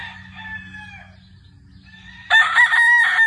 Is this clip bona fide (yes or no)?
yes